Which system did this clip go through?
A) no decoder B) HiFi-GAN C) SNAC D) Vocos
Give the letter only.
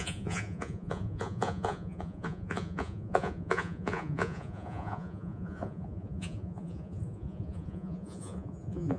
D